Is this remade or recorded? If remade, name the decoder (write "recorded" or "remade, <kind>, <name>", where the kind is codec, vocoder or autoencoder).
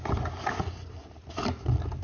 recorded